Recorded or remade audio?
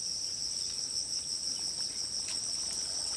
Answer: recorded